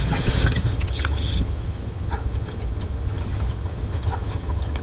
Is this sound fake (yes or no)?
yes